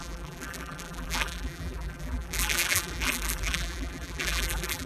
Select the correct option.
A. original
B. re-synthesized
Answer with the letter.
B